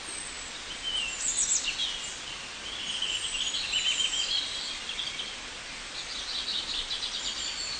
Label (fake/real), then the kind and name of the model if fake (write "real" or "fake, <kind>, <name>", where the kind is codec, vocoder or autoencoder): real